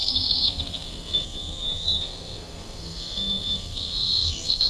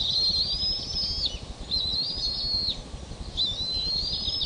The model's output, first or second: first